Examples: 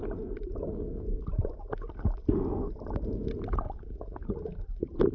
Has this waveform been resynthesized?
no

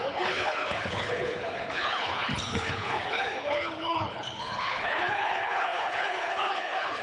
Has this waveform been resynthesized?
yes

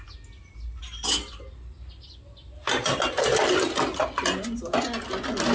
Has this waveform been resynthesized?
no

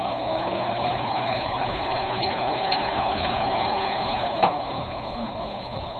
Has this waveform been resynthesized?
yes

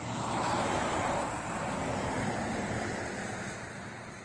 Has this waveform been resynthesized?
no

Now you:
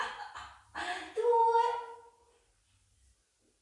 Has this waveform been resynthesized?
no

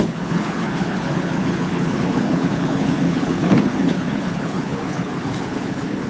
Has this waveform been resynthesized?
yes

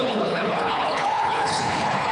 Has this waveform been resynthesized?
yes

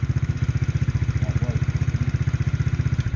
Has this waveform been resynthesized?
no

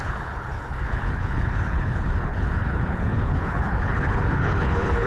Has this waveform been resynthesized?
yes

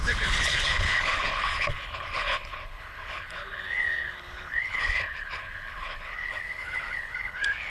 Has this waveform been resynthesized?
yes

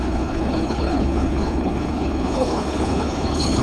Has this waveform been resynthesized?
yes